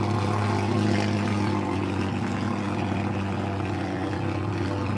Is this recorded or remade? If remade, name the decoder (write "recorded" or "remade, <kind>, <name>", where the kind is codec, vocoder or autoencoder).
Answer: recorded